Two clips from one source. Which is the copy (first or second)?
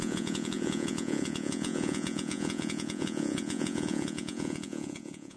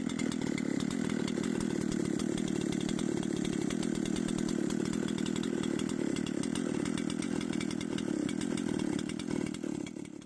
first